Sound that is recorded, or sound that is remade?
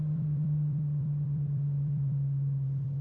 remade